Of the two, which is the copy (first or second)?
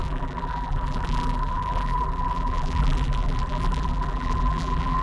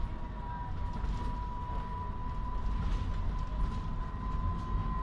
first